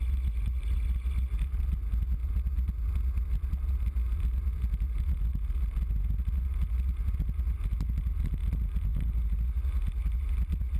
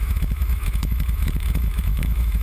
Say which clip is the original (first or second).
first